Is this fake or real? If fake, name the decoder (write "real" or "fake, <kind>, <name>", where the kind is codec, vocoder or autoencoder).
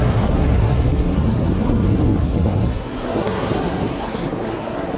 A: fake, codec, SNAC